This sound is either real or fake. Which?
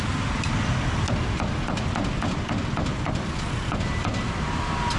real